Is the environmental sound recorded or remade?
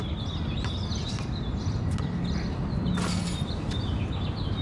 recorded